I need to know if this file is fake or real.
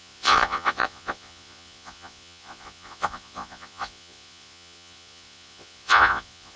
fake